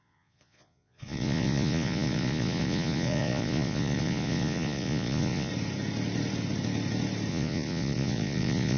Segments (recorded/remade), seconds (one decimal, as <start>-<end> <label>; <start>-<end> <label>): 0.0-5.5 remade; 5.5-7.3 recorded; 7.3-8.8 remade